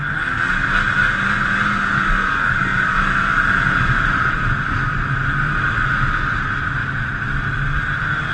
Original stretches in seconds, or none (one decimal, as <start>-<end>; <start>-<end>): 0.0-8.3